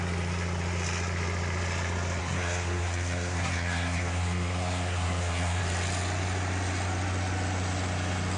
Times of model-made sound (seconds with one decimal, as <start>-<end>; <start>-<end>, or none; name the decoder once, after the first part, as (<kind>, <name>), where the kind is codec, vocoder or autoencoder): 2.2-5.6 (codec, SNAC)